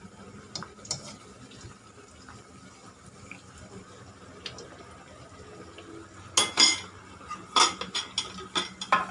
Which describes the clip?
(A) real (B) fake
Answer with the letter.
A